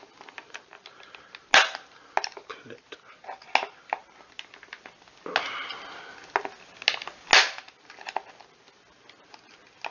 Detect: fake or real real